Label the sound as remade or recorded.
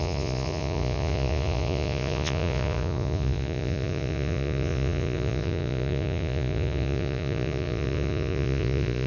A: remade